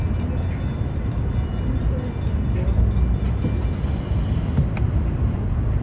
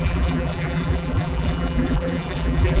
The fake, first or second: second